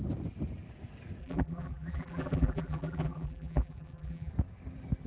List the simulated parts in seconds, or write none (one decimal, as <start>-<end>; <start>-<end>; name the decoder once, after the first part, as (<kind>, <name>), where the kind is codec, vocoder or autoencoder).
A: 1.2-4.3 (vocoder, BigVGAN v2)